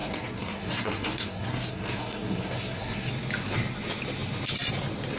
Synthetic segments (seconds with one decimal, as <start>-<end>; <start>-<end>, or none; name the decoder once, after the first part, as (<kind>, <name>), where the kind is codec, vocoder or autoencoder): 0.0-3.1 (codec, SNAC)